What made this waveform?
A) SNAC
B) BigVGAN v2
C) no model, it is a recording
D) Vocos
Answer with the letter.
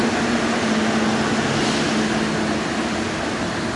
C